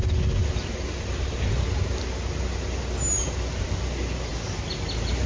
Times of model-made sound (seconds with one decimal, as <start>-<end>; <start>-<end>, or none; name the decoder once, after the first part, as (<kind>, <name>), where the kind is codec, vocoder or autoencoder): none